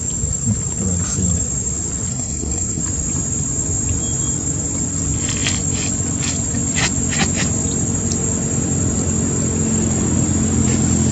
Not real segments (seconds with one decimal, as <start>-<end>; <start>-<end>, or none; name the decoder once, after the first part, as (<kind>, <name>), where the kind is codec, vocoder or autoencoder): 2.1-2.8 (codec, SNAC)